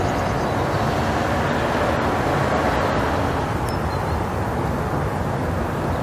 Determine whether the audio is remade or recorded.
recorded